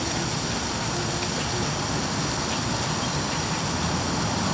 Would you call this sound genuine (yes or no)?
yes